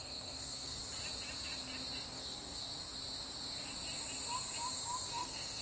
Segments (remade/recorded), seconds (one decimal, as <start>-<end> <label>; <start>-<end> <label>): 0.0-0.8 remade; 0.8-2.1 recorded; 2.1-2.7 remade; 2.7-5.1 recorded; 5.1-5.6 remade